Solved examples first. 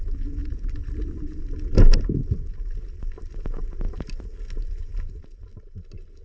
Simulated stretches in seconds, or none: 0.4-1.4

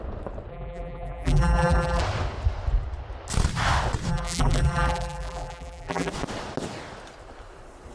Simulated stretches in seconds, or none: 0.5-2.0; 4.1-6.1

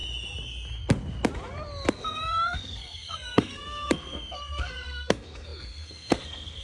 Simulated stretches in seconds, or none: 1.9-6.6

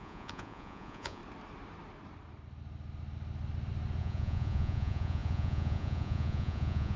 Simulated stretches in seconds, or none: 0.0-1.2; 4.0-7.0

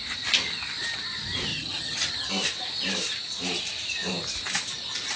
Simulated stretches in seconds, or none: 1.5-2.3

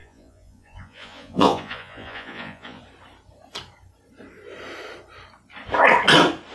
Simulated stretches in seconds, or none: 0.0-2.8